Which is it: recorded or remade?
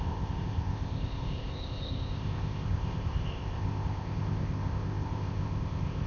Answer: remade